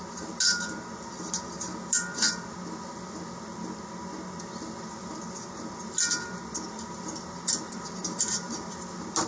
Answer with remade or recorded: recorded